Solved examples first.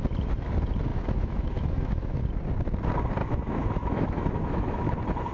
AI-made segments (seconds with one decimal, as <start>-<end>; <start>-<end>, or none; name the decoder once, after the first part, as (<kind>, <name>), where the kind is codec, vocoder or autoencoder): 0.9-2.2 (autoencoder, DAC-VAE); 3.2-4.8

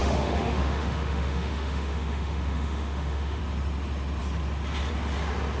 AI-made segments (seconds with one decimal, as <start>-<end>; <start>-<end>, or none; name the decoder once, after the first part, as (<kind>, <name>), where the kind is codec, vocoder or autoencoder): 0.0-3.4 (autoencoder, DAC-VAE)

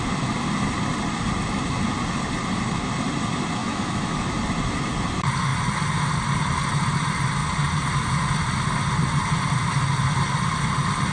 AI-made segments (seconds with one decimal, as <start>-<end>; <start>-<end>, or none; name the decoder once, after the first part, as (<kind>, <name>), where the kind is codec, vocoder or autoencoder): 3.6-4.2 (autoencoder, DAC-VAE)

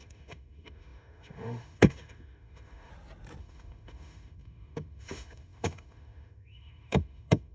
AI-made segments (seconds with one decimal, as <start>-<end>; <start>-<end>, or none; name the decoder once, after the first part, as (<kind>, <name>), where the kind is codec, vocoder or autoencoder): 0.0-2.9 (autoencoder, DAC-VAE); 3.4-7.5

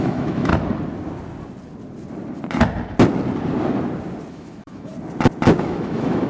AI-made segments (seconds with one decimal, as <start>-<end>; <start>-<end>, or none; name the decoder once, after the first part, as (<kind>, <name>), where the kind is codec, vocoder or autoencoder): 0.0-0.5 (autoencoder, DAC-VAE); 4.3-4.9; 5.6-6.3